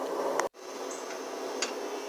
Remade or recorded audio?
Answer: recorded